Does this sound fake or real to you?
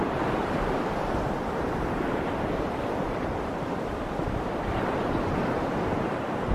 fake